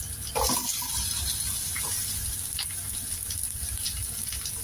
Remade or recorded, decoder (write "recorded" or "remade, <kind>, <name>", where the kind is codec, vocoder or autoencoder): recorded